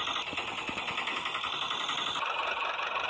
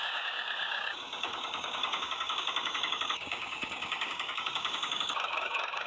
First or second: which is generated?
second